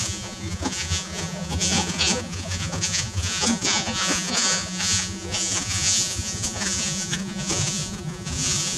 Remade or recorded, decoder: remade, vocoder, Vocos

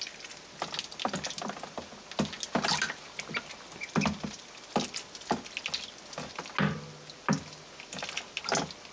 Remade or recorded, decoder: recorded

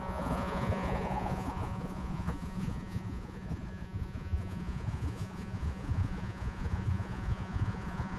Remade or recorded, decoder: remade, vocoder, Vocos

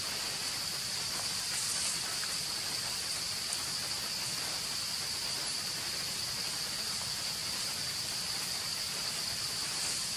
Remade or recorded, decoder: recorded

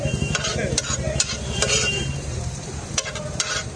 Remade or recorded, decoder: remade, vocoder, BigVGAN v2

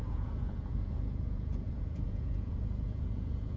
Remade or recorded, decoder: remade, vocoder, Vocos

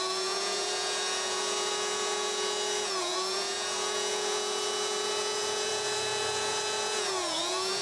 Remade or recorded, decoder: remade, vocoder, Vocos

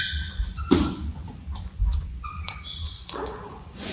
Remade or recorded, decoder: remade, vocoder, Vocos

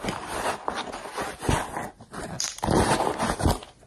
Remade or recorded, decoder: recorded